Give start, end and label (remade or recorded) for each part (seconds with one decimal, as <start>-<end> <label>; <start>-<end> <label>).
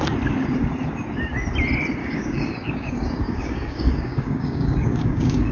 0.0-2.0 recorded; 2.0-5.5 remade